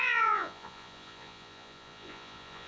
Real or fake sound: fake